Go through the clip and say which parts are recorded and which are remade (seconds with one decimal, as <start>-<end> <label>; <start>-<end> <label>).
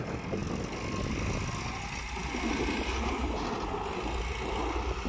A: 0.0-5.1 recorded